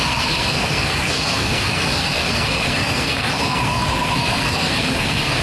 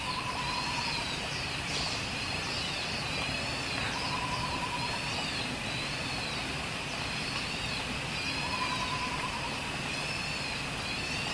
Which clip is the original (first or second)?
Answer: second